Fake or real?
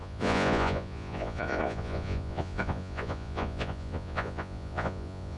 fake